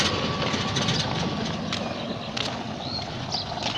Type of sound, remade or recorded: recorded